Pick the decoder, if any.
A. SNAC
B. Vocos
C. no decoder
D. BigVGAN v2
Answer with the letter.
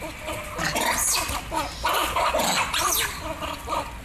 C